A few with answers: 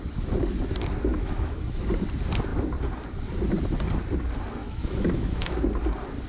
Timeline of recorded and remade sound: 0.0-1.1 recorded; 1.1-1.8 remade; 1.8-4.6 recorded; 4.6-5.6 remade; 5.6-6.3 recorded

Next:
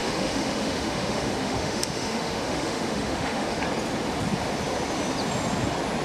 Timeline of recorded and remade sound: 0.0-3.6 remade; 3.6-6.0 recorded

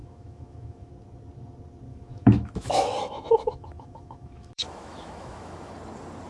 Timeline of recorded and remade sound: 0.0-0.9 remade; 0.9-1.9 recorded; 1.9-5.7 remade; 5.7-6.3 recorded

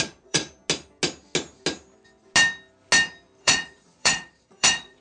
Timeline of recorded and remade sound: 0.0-0.4 remade; 0.4-3.4 recorded; 3.4-5.0 remade

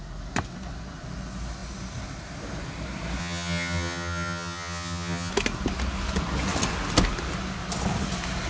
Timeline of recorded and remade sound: 0.0-3.2 recorded; 3.2-5.3 remade; 5.3-8.5 recorded